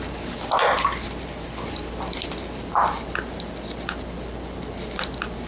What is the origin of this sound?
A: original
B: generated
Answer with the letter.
A